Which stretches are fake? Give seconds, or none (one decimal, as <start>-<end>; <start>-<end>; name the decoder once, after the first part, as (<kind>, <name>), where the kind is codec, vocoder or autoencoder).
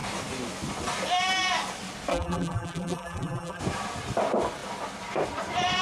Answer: 2.1-3.6 (vocoder, BigVGAN v2)